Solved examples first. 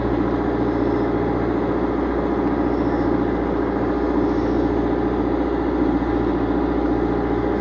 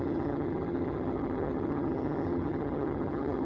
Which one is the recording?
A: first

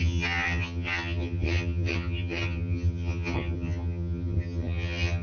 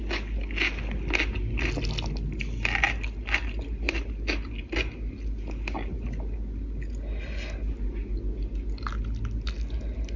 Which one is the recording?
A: second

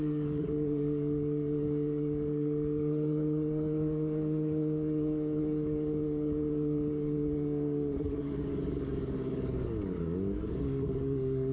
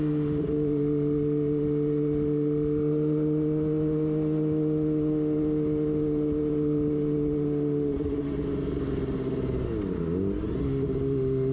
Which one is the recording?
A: second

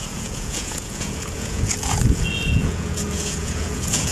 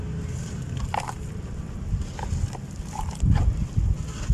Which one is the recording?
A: second